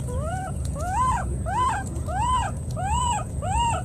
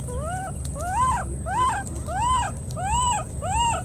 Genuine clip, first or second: second